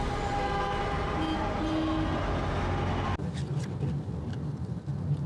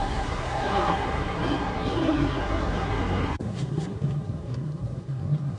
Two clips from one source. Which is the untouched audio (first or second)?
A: first